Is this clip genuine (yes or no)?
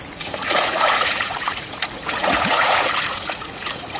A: no